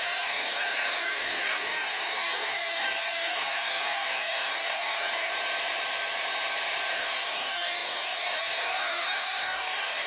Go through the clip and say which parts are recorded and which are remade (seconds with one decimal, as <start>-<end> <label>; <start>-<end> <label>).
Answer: 0.0-5.3 remade; 5.3-6.9 recorded; 6.9-10.1 remade